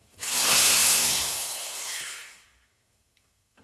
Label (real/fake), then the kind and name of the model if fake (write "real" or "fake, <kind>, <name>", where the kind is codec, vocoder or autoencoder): fake, codec, SNAC